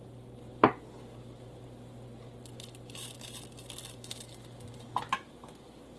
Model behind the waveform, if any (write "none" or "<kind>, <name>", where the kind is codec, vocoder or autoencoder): none